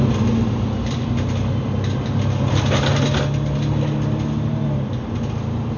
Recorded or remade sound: recorded